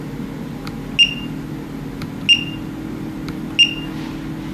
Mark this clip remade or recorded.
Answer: recorded